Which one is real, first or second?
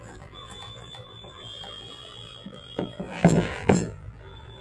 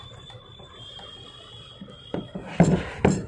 second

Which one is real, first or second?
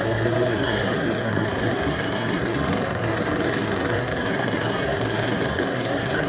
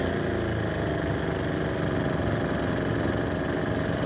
second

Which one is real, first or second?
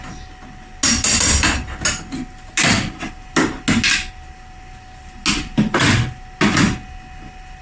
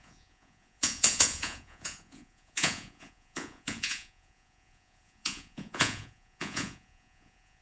first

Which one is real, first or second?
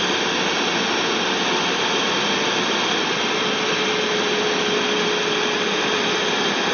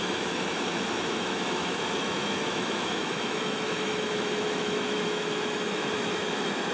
first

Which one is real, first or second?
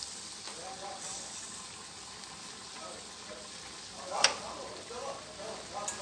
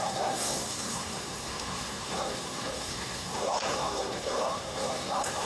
first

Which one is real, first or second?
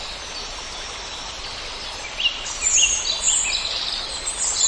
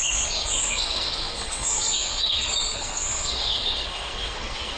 first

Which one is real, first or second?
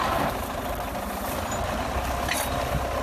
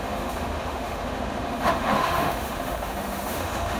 first